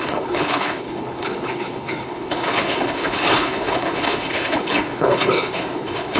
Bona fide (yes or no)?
no